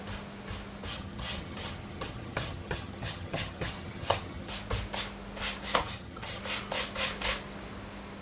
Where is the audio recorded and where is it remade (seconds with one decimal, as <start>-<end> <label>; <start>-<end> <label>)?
0.0-0.9 recorded; 0.9-4.5 remade; 4.5-5.8 recorded; 5.8-6.4 remade; 6.4-8.2 recorded

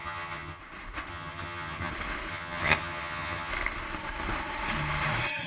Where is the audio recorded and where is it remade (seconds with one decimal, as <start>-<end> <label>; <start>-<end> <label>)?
0.0-0.6 remade; 0.6-1.1 recorded; 1.1-1.9 remade; 1.9-2.3 recorded; 2.3-3.5 remade; 3.5-5.5 recorded

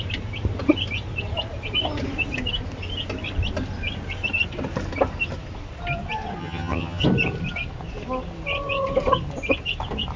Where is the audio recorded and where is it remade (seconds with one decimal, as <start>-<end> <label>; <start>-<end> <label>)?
0.0-6.4 recorded; 6.4-7.0 remade; 7.0-10.2 recorded

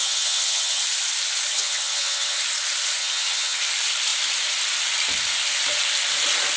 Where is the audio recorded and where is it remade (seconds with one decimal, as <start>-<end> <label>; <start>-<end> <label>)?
0.0-0.8 remade; 0.8-1.5 recorded; 1.5-2.4 remade; 2.4-3.0 recorded; 3.0-3.6 remade; 3.6-6.6 recorded

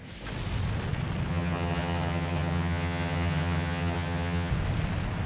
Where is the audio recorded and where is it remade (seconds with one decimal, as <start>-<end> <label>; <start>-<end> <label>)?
0.0-1.3 recorded; 1.3-4.5 remade; 4.5-5.3 recorded

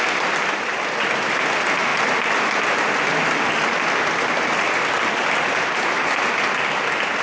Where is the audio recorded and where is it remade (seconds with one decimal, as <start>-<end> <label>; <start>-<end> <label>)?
0.0-7.2 recorded

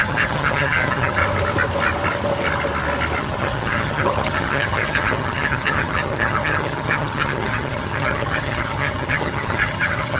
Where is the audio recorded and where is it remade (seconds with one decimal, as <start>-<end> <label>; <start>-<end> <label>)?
0.0-1.2 remade; 1.2-3.2 recorded; 3.2-10.2 remade